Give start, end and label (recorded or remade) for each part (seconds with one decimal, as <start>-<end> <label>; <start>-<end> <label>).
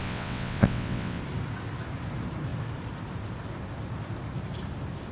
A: 0.0-1.2 remade; 1.2-5.1 recorded